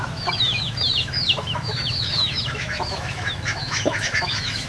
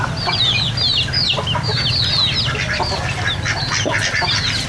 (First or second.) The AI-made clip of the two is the first